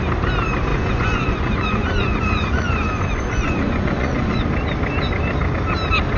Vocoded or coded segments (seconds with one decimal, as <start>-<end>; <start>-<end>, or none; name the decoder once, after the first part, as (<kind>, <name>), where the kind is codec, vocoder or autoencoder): 0.7-4.4 (vocoder, Vocos)